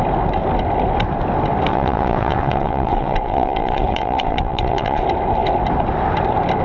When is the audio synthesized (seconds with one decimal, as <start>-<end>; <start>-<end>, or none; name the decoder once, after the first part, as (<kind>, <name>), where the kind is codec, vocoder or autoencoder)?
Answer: 1.7-5.0 (vocoder, WaveNeXt)